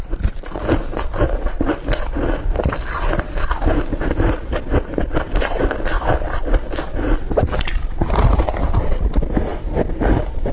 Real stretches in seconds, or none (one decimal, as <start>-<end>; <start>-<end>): 0.0-10.5